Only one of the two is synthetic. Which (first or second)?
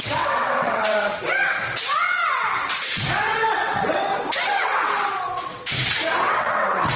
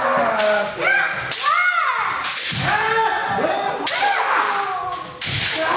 first